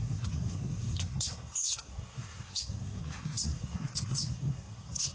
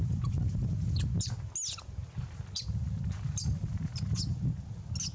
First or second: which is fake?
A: first